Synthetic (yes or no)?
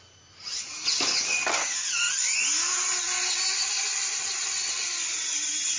no